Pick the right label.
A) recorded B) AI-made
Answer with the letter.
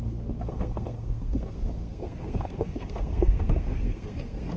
B